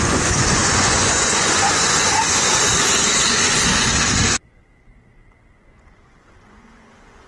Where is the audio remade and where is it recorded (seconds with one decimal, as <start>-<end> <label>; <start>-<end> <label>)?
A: 0.0-3.9 remade; 3.9-5.5 recorded; 5.5-7.3 remade